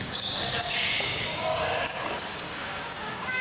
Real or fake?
fake